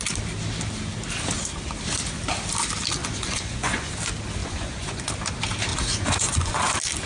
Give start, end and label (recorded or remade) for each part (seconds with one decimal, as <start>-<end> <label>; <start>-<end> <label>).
0.0-3.0 recorded; 3.0-3.9 remade; 3.9-4.4 recorded; 4.4-5.1 remade; 5.1-5.7 recorded; 5.7-6.6 remade; 6.6-7.1 recorded